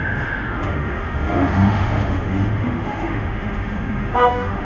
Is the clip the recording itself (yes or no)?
no